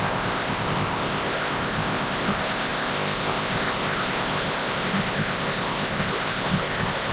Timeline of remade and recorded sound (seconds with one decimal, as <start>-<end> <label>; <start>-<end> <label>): 0.0-7.1 remade